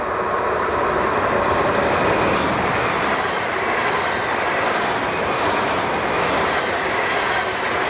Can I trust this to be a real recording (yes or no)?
no